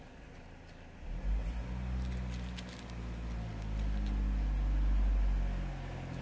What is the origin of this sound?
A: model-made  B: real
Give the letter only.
B